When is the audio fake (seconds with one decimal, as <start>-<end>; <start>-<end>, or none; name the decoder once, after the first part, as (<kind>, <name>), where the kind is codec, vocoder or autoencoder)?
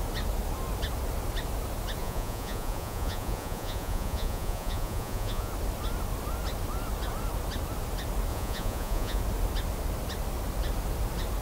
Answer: 2.0-5.5 (vocoder, Vocos); 8.3-9.2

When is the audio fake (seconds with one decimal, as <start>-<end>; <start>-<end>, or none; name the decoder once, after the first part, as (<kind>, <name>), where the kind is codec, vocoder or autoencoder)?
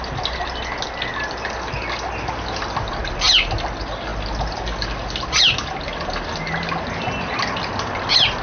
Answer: none